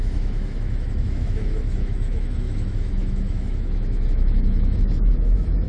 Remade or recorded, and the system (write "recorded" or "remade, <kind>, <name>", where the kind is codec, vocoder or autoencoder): remade, autoencoder, DAC-VAE